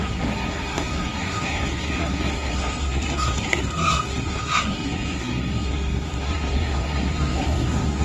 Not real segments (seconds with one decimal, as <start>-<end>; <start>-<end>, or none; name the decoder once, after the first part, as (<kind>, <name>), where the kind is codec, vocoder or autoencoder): 0.0-8.0 (codec, SNAC)